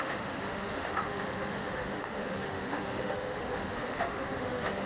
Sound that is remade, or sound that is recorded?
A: remade